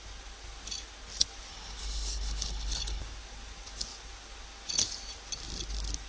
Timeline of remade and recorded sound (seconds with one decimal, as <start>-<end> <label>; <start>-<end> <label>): 0.0-1.5 recorded; 1.5-3.0 remade; 3.0-6.1 recorded